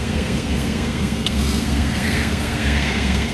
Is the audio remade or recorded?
remade